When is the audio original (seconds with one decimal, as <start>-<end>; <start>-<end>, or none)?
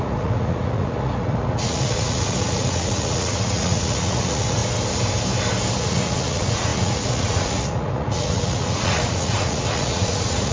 4.6-5.8